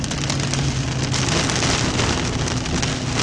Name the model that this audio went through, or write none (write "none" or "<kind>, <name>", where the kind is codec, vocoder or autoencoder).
none